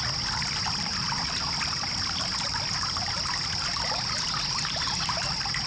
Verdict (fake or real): real